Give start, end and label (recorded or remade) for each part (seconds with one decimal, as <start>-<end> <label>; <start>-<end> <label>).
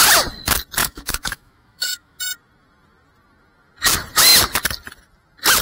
0.0-0.8 recorded; 0.8-2.2 remade; 2.2-5.6 recorded